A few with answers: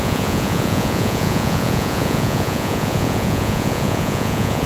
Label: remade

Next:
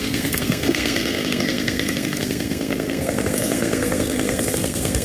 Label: remade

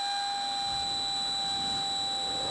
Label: recorded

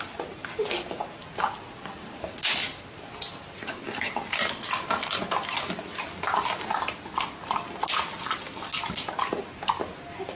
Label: recorded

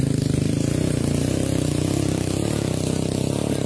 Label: recorded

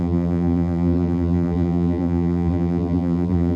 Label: remade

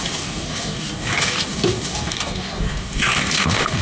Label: remade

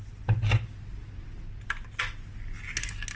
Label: recorded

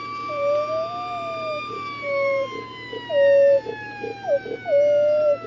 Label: recorded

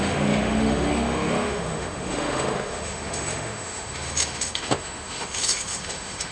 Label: remade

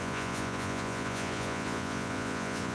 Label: remade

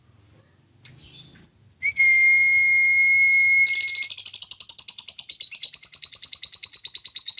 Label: recorded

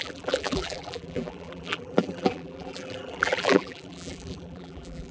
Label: remade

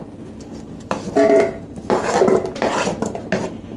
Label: recorded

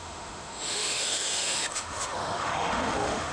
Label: remade